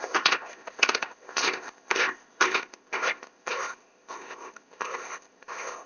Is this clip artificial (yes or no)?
yes